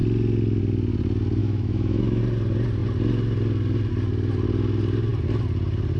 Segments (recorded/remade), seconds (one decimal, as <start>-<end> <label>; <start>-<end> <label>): 0.0-1.4 recorded; 1.4-2.2 remade; 2.2-6.0 recorded